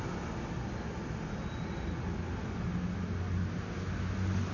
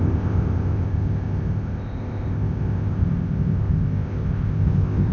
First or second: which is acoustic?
first